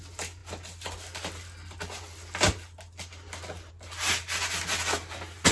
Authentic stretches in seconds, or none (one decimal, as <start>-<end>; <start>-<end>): 0.0-5.5